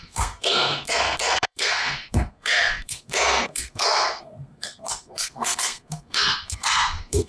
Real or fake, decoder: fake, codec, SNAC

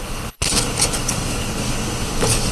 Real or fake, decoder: fake, codec, HILCodec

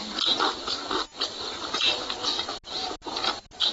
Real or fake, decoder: real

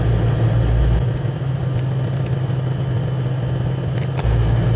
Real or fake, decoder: real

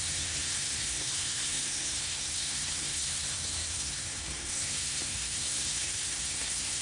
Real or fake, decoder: fake, codec, SNAC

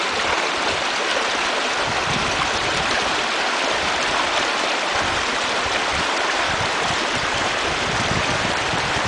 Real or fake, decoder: fake, vocoder, BigVGAN v2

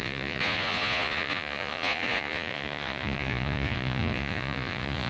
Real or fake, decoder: fake, vocoder, Vocos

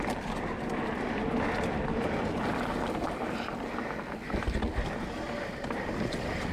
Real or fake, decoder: real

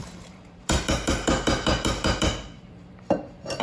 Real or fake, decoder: fake, vocoder, BigVGAN v2